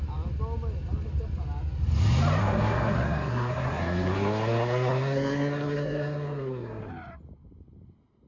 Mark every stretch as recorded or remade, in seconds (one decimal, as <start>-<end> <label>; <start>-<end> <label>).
0.0-2.4 recorded; 2.4-6.9 remade; 6.9-8.3 recorded